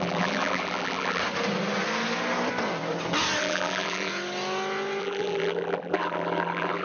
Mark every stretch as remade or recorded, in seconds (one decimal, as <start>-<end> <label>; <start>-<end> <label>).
0.0-1.2 remade; 1.2-3.4 recorded; 3.4-4.1 remade; 4.1-5.0 recorded; 5.0-6.8 remade